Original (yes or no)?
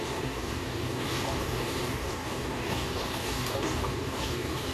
no